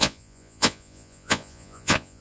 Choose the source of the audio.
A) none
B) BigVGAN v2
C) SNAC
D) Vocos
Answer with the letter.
D